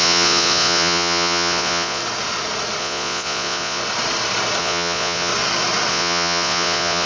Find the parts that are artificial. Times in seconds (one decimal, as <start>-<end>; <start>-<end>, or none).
0.0-2.0; 2.8-3.8; 4.6-5.3; 5.9-7.1